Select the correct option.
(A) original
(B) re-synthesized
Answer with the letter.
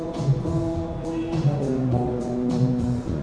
B